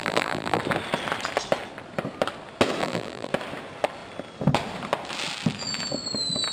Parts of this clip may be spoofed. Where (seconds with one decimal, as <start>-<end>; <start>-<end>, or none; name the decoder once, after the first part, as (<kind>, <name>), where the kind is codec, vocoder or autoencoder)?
0.0-0.6 (vocoder, BigVGAN v2); 2.8-3.3